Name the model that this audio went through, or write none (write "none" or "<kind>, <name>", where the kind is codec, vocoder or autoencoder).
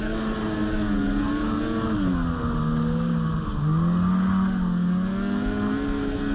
none